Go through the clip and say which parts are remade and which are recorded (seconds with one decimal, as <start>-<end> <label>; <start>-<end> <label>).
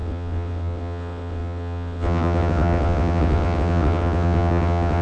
0.0-5.0 remade